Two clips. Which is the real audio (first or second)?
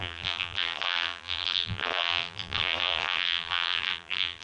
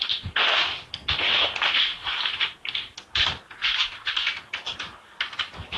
second